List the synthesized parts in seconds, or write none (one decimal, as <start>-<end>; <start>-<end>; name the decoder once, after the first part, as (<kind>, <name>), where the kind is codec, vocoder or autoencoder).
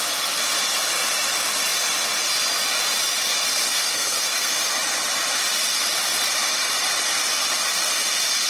3.7-4.5 (codec, SNAC)